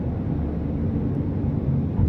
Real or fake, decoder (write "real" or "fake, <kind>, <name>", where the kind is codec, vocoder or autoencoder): real